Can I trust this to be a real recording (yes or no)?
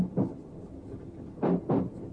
yes